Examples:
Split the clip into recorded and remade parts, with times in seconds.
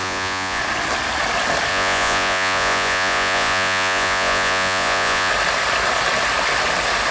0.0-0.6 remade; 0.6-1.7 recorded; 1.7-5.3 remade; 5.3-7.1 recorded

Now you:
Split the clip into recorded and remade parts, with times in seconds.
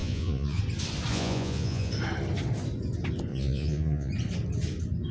0.0-0.6 remade; 0.6-1.1 recorded; 1.1-1.9 remade; 1.9-3.3 recorded; 3.3-4.1 remade; 4.1-5.1 recorded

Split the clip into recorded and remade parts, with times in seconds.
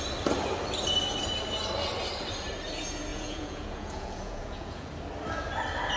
0.0-3.1 recorded; 3.1-4.9 remade; 4.9-6.0 recorded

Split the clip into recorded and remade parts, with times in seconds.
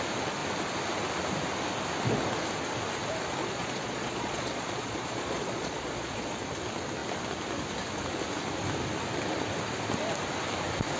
0.0-3.4 recorded; 3.4-6.4 remade; 6.4-11.0 recorded